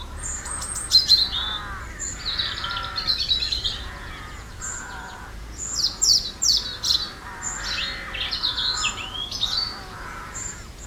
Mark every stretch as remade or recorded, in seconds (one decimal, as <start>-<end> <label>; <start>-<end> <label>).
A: 0.0-1.6 remade; 1.6-3.8 recorded; 3.8-6.1 remade; 6.1-8.2 recorded; 8.2-10.9 remade